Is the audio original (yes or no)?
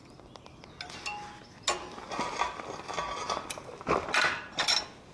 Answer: yes